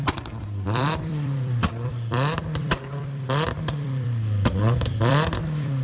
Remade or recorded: remade